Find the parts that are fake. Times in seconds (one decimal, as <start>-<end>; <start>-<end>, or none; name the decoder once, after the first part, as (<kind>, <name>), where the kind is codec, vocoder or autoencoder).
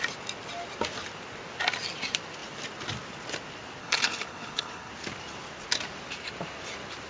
3.8-4.9 (codec, HILCodec)